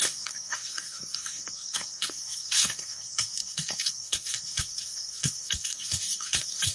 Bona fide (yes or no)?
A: no